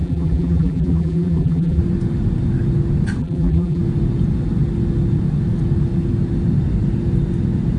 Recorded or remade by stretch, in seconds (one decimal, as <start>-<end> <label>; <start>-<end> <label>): 0.0-1.8 remade; 1.8-3.2 recorded; 3.2-3.8 remade; 3.8-7.8 recorded